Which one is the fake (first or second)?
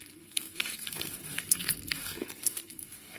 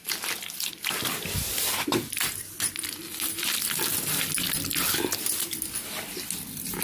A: first